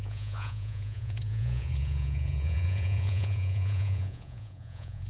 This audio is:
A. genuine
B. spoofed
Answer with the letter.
B